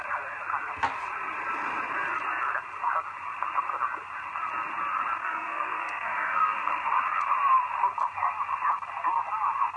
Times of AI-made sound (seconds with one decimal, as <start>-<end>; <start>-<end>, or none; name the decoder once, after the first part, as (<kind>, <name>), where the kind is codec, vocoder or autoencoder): 5.2-6.7 (codec, SNAC)

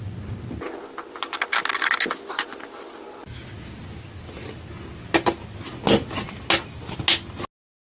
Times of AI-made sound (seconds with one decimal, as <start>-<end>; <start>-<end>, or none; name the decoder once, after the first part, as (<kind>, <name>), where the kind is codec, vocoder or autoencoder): none

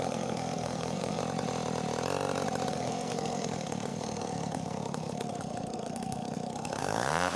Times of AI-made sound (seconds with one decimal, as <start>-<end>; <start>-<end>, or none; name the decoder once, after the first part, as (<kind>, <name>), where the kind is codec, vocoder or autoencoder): 0.0-1.2 (codec, SNAC); 2.7-7.4

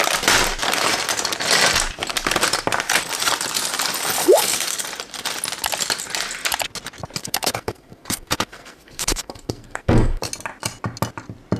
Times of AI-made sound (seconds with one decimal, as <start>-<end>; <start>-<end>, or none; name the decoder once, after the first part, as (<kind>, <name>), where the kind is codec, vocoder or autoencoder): 4.2-4.8 (codec, SNAC); 7.2-10.3